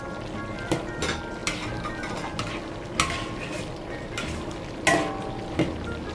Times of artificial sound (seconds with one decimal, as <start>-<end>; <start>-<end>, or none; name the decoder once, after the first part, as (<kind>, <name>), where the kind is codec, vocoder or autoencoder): none